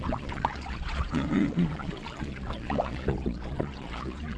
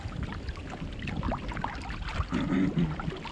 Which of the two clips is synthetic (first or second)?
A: first